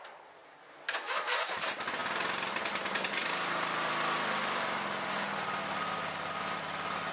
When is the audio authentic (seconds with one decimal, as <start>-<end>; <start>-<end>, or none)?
0.0-7.1